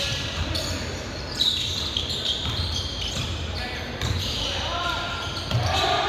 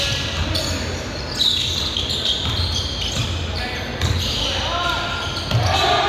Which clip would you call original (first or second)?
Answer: second